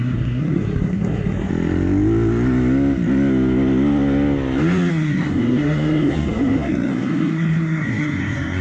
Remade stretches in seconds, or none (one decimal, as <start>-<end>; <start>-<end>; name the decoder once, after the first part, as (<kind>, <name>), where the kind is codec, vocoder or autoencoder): 0.0-1.5 (codec, SNAC); 4.9-8.6